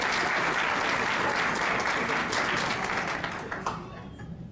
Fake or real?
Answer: real